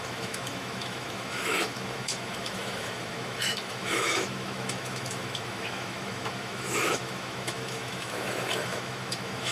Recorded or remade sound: remade